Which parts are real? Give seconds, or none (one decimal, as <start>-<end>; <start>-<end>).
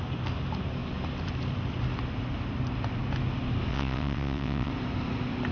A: 0.0-3.7; 4.7-5.5